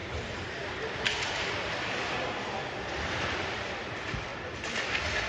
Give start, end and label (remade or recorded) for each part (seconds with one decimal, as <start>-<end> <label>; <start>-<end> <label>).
0.0-3.2 recorded; 3.2-4.3 remade; 4.3-5.3 recorded